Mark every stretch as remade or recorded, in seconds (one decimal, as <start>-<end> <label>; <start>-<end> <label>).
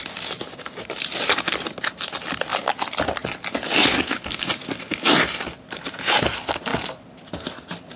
0.0-3.9 recorded; 3.9-4.4 remade; 4.4-8.0 recorded